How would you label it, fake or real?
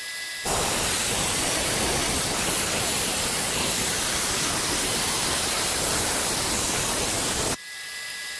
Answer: real